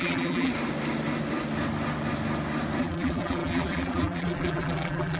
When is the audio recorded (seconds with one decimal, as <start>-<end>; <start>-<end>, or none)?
0.5-2.8